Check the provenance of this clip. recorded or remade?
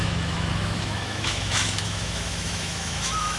remade